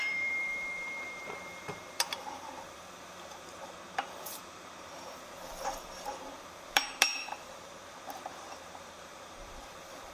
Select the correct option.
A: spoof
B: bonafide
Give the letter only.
A